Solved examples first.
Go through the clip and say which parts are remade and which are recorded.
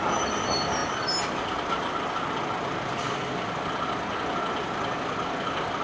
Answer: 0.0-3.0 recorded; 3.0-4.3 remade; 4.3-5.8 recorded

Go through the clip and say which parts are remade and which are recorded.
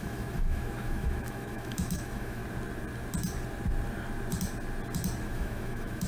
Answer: 0.0-2.4 remade; 2.4-5.2 recorded; 5.2-6.1 remade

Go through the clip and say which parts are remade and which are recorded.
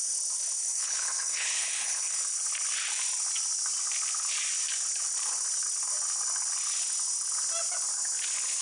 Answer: 0.0-0.6 recorded; 0.6-2.2 remade; 2.2-8.6 recorded